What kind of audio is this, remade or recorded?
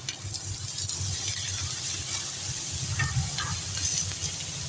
recorded